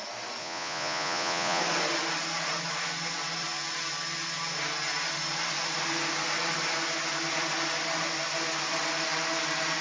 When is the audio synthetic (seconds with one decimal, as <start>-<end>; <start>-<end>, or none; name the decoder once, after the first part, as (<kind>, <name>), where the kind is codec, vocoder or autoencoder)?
0.4-1.6 (vocoder, Vocos)